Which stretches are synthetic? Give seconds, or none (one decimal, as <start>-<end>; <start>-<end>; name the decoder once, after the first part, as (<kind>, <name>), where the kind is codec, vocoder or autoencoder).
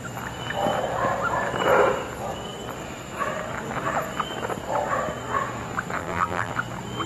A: 6.0-6.5 (vocoder, BigVGAN v2)